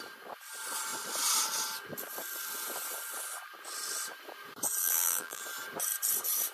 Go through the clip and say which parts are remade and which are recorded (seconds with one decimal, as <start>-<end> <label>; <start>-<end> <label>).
0.0-4.8 recorded; 4.8-5.4 remade; 5.4-6.5 recorded